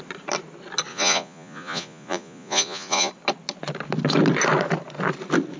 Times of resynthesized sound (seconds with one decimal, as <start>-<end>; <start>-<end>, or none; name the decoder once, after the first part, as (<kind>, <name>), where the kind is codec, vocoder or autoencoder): 0.9-3.1 (vocoder, Vocos)